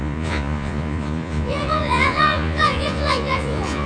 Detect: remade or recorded remade